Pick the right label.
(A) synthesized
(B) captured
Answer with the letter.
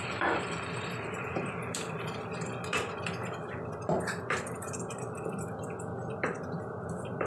A